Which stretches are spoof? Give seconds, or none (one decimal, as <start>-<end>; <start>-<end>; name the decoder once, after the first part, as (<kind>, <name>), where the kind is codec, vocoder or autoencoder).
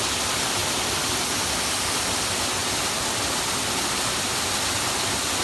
none